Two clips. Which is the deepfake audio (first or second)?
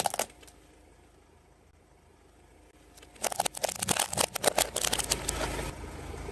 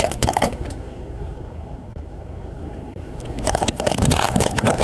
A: second